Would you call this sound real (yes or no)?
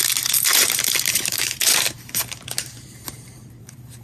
no